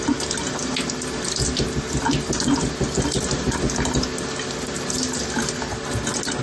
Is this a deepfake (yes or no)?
no